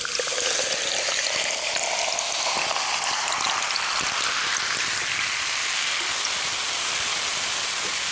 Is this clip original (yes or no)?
yes